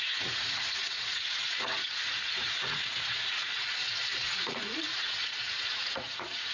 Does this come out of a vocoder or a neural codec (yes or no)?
yes